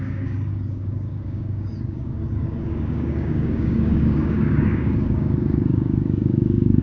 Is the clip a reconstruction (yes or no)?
yes